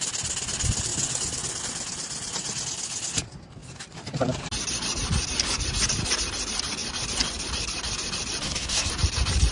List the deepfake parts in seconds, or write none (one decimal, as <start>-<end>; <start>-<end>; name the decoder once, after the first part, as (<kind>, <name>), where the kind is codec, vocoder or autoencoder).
8.4-8.9 (codec, SNAC)